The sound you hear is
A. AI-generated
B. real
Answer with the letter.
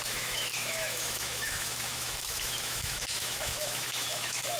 A